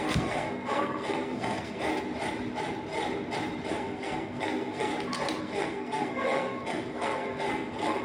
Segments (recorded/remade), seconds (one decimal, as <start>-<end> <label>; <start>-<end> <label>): 0.0-1.9 remade; 1.9-3.7 recorded; 3.7-4.9 remade; 4.9-5.4 recorded; 5.4-8.0 remade